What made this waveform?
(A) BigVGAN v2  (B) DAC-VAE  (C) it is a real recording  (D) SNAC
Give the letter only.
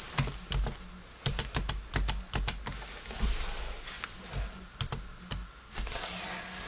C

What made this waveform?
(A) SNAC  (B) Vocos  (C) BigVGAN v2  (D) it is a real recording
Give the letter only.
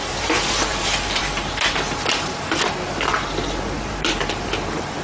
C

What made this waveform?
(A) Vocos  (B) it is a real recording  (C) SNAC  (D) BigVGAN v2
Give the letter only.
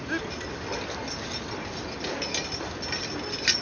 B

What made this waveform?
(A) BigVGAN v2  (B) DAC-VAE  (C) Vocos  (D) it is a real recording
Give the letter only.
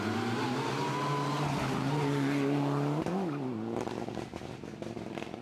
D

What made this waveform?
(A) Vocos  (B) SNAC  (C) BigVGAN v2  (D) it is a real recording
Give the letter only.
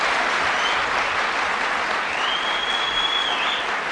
D